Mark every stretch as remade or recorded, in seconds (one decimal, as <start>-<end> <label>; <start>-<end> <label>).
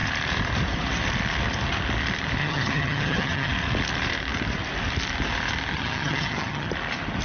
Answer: 0.0-2.4 recorded; 2.4-3.5 remade; 3.5-5.7 recorded; 5.7-6.7 remade; 6.7-7.2 recorded